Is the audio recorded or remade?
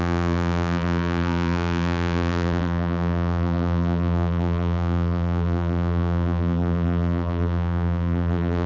remade